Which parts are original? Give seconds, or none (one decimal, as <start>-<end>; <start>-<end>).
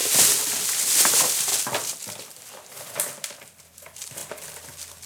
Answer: 0.0-1.0; 1.5-3.6; 4.2-5.1